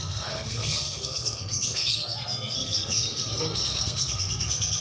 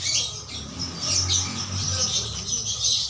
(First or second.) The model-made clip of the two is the first